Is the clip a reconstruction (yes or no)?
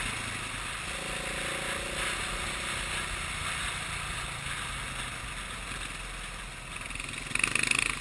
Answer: no